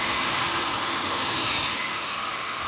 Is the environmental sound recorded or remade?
remade